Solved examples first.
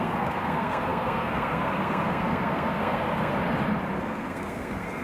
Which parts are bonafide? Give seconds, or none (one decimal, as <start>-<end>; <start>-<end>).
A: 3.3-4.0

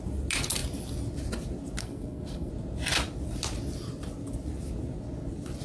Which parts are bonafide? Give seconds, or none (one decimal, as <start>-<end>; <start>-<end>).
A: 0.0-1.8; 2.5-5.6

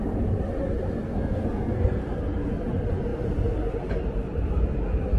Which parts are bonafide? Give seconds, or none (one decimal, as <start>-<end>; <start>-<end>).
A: 0.0-1.0; 2.0-5.2